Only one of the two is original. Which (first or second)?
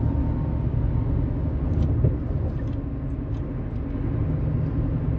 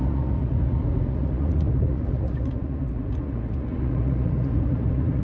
first